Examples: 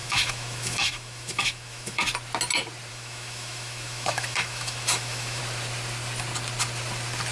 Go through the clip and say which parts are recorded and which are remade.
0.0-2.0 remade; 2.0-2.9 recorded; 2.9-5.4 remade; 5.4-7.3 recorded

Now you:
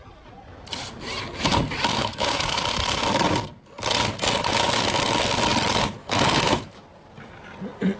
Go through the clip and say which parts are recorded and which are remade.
0.0-1.9 recorded; 1.9-2.6 remade; 2.6-6.0 recorded; 6.0-6.8 remade; 6.8-8.0 recorded

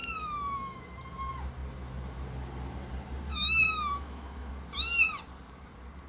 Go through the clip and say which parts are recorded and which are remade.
0.0-0.8 remade; 0.8-3.3 recorded; 3.3-4.5 remade; 4.5-6.1 recorded

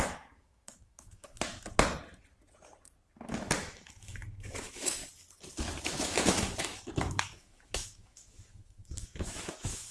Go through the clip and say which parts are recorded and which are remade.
0.0-1.5 remade; 1.5-3.6 recorded; 3.6-5.0 remade; 5.0-5.8 recorded; 5.8-9.9 remade